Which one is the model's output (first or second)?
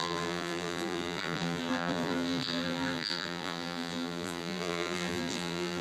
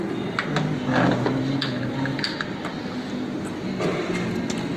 first